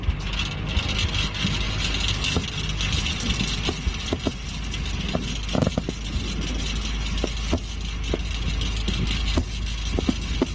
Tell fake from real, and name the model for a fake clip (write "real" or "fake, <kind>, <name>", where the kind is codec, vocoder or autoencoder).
real